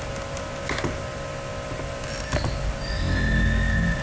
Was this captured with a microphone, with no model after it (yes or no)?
yes